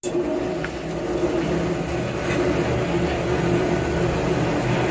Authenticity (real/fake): real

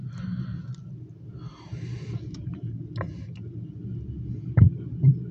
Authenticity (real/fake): real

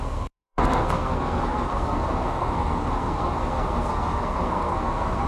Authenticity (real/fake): fake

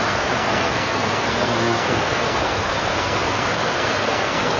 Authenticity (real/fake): fake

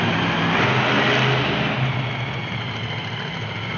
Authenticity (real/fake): real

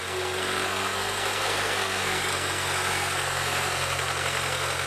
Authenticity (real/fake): fake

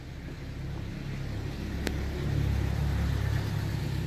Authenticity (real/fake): real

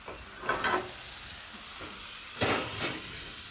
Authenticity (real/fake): real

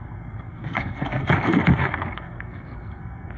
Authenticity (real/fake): fake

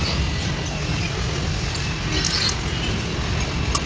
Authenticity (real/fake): real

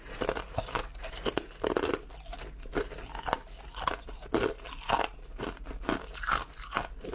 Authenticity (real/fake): real